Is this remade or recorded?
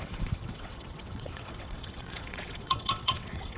remade